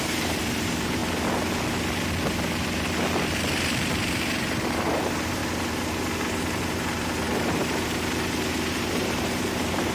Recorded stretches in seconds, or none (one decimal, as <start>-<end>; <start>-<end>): 1.0-4.2; 5.4-6.2